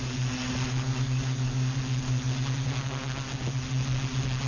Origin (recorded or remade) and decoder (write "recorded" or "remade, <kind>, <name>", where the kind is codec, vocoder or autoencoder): recorded